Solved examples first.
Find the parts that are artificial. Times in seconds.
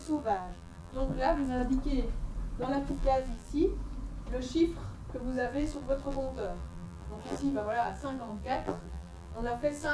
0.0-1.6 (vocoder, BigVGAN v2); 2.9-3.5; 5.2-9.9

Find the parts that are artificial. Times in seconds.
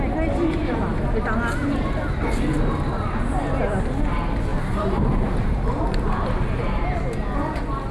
4.5-5.0 (vocoder, BigVGAN v2)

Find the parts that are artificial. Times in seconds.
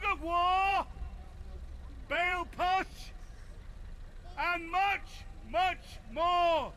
0.7-4.2 (vocoder, BigVGAN v2)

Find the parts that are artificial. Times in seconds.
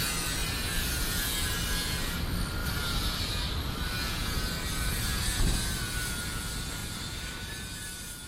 0.4-1.5 (vocoder, BigVGAN v2); 2.6-5.8; 6.8-7.4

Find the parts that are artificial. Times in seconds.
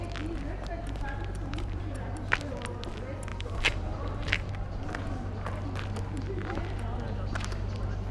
0.8-2.5 (vocoder, BigVGAN v2); 3.3-4.5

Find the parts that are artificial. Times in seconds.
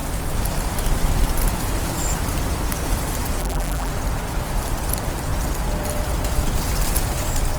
3.4-3.9 (vocoder, BigVGAN v2)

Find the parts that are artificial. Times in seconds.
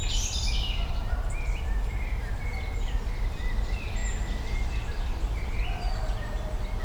0.0-4.0 (vocoder, BigVGAN v2)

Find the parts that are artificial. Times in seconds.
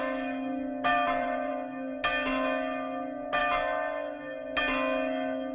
0.9-1.5 (vocoder, BigVGAN v2)